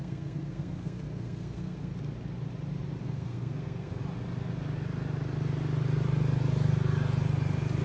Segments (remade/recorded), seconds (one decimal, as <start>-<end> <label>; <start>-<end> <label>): 0.0-1.9 remade; 1.9-3.0 recorded; 3.0-4.0 remade; 4.0-7.8 recorded